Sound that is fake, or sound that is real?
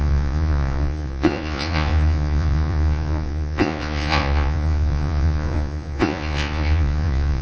fake